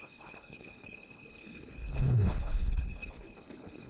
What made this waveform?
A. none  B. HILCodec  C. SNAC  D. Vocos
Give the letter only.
B